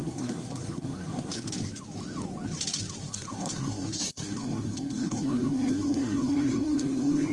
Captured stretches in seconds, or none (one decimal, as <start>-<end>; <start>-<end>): 1.5-3.0